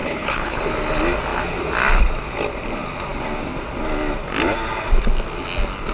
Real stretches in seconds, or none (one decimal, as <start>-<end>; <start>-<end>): 0.6-5.9